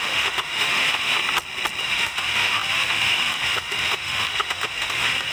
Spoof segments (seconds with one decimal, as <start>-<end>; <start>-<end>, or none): 0.0-1.2; 1.8-5.3